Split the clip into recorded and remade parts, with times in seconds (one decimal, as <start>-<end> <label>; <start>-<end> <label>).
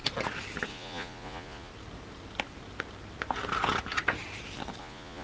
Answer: 0.0-0.7 recorded; 0.7-1.7 remade; 1.7-4.8 recorded; 4.8-5.2 remade